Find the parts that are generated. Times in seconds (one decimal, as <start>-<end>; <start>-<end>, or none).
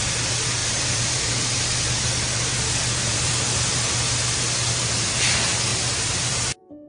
0.6-1.3; 3.1-3.9; 5.7-6.9